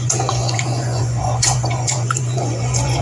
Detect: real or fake fake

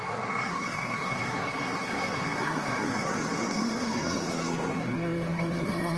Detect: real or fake fake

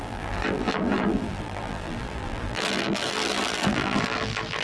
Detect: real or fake fake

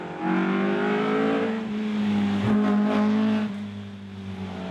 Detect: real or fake real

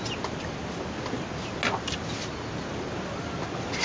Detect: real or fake real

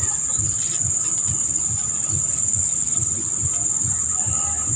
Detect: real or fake real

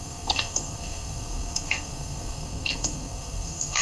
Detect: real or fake fake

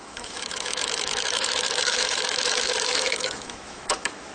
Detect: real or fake fake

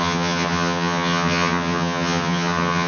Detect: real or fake fake